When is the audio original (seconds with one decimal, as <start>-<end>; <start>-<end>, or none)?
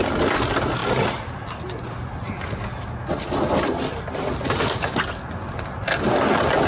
0.0-6.7